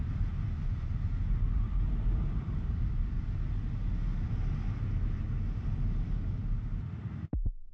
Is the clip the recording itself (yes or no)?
yes